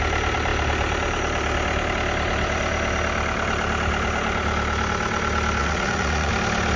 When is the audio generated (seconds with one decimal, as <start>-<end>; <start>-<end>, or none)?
5.6-6.3